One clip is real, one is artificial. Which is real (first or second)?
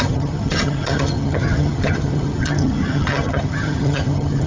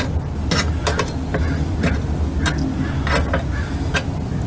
second